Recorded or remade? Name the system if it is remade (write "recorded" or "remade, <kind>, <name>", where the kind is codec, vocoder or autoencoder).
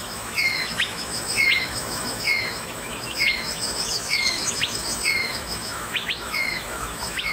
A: remade, autoencoder, DAC-VAE